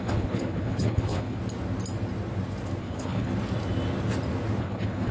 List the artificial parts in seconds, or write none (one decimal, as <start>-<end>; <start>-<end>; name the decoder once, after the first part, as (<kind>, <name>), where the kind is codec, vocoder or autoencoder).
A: 0.0-1.4 (codec, HILCodec); 2.8-3.3; 4.6-5.1